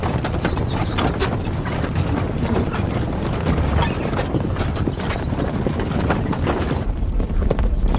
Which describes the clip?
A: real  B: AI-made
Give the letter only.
A